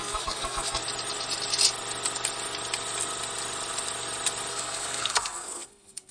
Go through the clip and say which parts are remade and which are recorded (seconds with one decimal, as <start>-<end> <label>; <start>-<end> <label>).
0.0-0.8 remade; 0.8-4.5 recorded; 4.5-6.1 remade